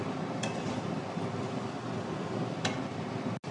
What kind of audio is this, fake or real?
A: real